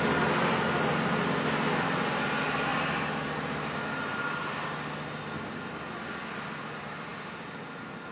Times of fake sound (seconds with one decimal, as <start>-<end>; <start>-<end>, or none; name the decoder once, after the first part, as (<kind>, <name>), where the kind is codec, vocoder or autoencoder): none